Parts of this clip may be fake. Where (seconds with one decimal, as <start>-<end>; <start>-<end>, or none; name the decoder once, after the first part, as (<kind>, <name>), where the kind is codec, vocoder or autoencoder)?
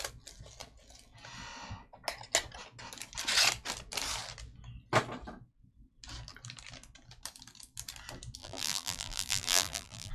8.4-10.1 (vocoder, BigVGAN v2)